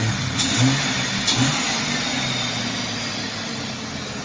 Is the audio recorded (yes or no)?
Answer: yes